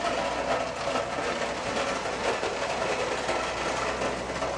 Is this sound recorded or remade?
recorded